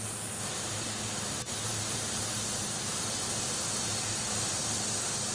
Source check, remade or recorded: recorded